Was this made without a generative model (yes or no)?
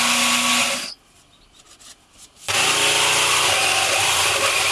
yes